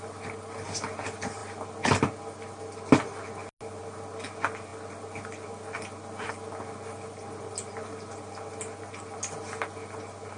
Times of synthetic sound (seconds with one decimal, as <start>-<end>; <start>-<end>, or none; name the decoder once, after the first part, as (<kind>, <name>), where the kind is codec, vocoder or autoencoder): none